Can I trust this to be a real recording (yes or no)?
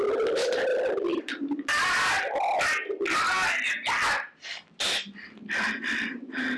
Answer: no